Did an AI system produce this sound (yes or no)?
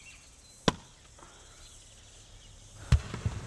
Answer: no